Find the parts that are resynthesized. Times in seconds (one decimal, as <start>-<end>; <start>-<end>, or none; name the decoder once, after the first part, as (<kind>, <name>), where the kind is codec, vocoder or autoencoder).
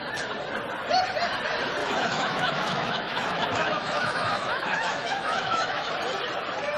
1.8-5.9 (autoencoder, DAC-VAE)